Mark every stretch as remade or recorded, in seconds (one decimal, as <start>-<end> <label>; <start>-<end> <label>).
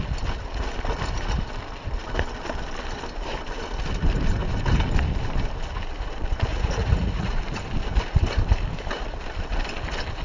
0.0-6.5 recorded; 6.5-7.4 remade; 7.4-10.2 recorded